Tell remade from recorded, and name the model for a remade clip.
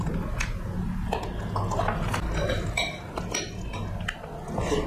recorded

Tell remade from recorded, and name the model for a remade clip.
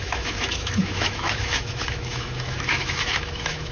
remade, autoencoder, DAC-VAE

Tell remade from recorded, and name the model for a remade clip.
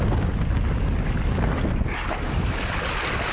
recorded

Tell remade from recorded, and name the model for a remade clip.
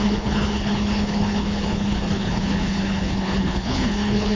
remade, codec, HILCodec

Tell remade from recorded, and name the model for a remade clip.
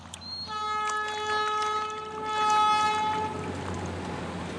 recorded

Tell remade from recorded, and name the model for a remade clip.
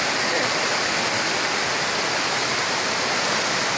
recorded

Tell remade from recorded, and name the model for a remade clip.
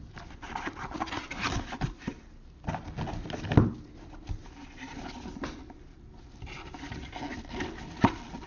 recorded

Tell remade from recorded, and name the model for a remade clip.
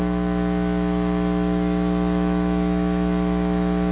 remade, autoencoder, DAC-VAE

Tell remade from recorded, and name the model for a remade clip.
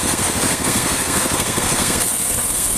remade, codec, SNAC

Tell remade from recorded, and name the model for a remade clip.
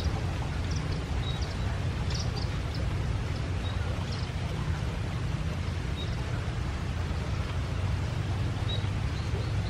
recorded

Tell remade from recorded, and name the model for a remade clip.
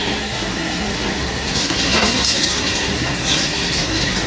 remade, codec, SNAC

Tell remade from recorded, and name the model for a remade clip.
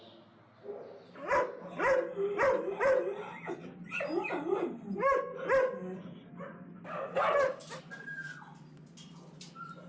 recorded